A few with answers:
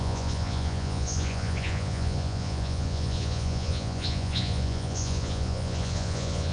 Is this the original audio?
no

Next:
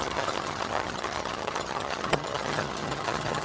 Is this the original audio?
no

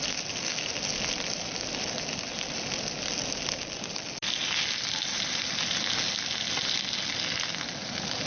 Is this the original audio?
yes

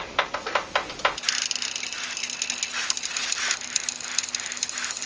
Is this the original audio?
yes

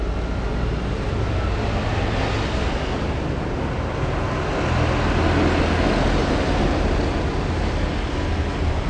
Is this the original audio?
yes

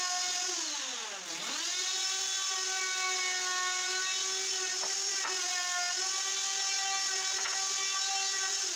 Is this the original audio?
yes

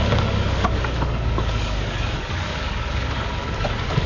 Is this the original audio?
no